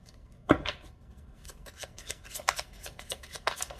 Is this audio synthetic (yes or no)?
yes